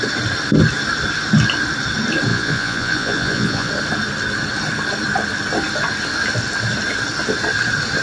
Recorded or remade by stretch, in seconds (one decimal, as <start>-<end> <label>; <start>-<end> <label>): 0.0-2.3 recorded; 2.3-3.7 remade; 3.7-8.0 recorded